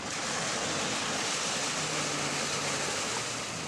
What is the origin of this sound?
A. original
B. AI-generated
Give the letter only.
A